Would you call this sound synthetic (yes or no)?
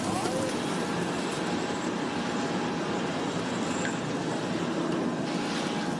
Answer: no